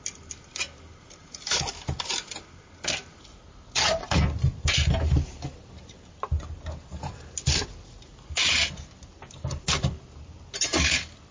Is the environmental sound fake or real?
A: real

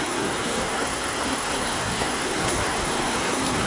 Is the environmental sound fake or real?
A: fake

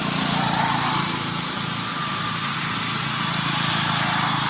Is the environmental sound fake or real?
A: real